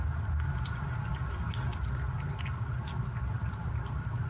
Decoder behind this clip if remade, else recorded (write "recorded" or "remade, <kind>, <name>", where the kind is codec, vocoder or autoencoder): recorded